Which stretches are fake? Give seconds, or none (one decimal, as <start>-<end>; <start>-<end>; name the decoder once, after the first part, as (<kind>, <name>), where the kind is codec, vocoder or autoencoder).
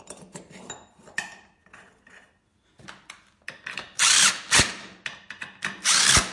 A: none